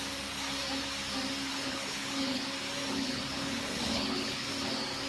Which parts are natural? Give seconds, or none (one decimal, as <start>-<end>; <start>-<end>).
0.0-1.5; 2.4-2.9; 4.5-5.1